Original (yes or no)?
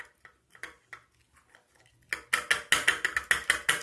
yes